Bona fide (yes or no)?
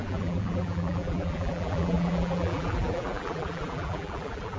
no